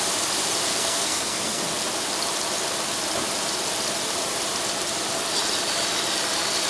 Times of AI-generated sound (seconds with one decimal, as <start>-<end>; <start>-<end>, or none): 0.7-1.6